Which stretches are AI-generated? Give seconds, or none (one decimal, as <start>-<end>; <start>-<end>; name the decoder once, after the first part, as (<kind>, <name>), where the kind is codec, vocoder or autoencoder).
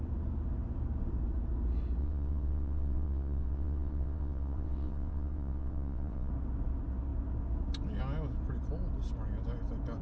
2.0-6.3 (vocoder, WaveNeXt)